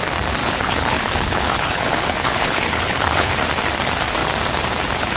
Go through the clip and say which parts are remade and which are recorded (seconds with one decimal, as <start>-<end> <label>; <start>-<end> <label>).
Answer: 0.0-0.4 recorded; 0.4-3.3 remade; 3.3-5.2 recorded